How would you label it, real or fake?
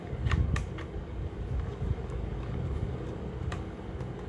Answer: fake